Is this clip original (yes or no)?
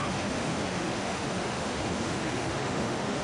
no